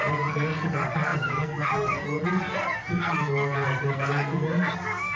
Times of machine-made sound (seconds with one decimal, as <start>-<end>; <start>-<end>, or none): 0.0-5.2